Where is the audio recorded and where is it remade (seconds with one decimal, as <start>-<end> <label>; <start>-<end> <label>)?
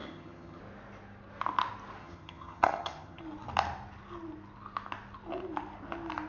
0.0-0.6 remade; 0.6-2.0 recorded; 2.0-3.2 remade; 3.2-6.3 recorded